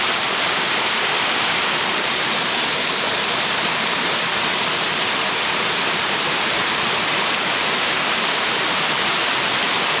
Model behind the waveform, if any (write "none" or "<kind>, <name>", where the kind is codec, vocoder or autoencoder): vocoder, BigVGAN v2